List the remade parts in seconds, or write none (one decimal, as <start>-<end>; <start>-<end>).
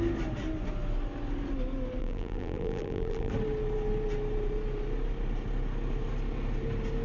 2.0-3.3